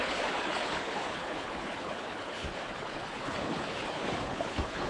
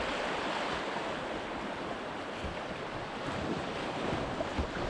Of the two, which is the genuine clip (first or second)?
second